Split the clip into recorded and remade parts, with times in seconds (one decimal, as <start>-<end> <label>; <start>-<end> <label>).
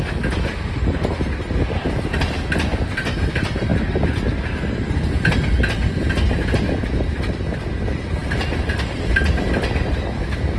0.0-10.6 recorded